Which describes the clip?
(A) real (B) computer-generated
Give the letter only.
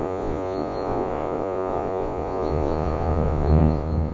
B